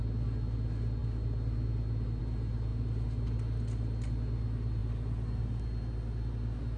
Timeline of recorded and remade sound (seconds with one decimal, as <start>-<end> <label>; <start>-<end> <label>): 0.0-6.8 recorded